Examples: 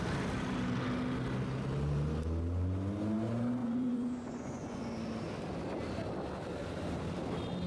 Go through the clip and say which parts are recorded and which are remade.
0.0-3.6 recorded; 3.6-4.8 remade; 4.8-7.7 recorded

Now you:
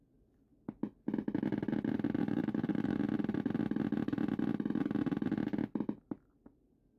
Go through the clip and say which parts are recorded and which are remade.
0.0-2.2 recorded; 2.2-3.0 remade; 3.0-7.0 recorded

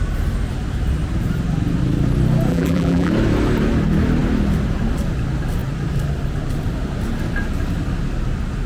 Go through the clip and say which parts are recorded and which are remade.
0.0-2.5 recorded; 2.5-3.1 remade; 3.1-8.7 recorded

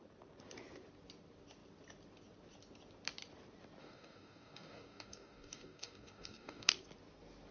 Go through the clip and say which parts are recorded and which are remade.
0.0-3.8 recorded; 3.8-6.7 remade; 6.7-7.5 recorded

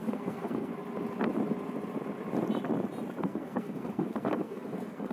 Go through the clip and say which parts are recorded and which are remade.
0.0-0.7 remade; 0.7-3.2 recorded; 3.2-5.1 remade

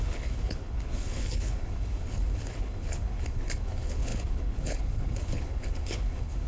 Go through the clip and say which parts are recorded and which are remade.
0.0-6.5 remade

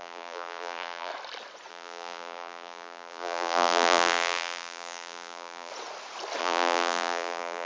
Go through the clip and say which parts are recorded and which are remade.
0.0-1.1 remade; 1.1-1.7 recorded; 1.7-5.7 remade; 5.7-6.4 recorded; 6.4-7.7 remade